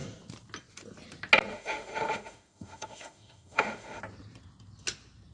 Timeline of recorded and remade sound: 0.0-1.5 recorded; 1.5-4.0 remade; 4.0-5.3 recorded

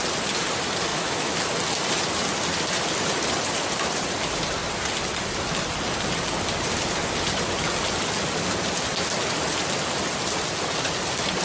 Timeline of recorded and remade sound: 0.0-0.9 recorded; 0.9-1.4 remade; 1.4-11.4 recorded

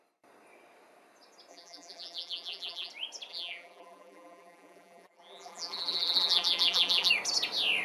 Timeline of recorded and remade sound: 0.0-1.5 recorded; 1.5-2.9 remade; 2.9-3.3 recorded; 3.3-7.1 remade; 7.1-7.8 recorded